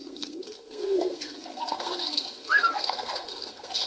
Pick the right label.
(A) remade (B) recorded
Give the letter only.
A